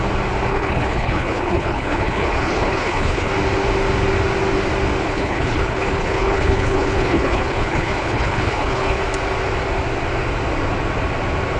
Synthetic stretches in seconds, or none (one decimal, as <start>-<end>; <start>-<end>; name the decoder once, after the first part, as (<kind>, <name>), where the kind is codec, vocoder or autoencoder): 0.5-3.3 (codec, HILCodec); 5.0-9.0